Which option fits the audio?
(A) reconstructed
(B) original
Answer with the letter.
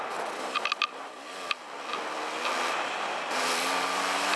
B